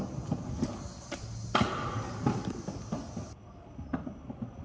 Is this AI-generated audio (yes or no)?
no